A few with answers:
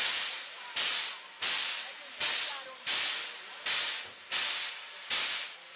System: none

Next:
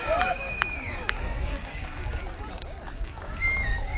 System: codec, DAC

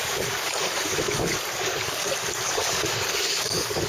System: codec, DAC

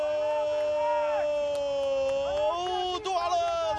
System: none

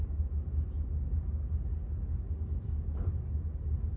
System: none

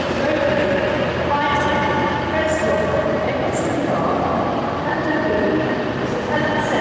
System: none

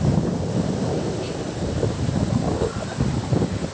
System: none